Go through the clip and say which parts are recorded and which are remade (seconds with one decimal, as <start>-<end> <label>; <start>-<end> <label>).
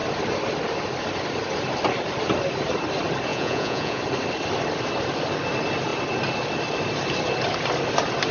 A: 0.0-3.3 recorded; 3.3-4.0 remade; 4.0-8.3 recorded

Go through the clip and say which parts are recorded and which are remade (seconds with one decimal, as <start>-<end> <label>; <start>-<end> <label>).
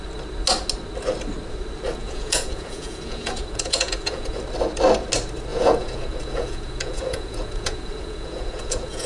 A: 0.0-2.0 recorded; 2.0-4.4 remade; 4.4-5.5 recorded; 5.5-9.1 remade